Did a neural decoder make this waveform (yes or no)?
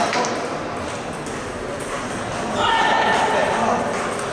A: no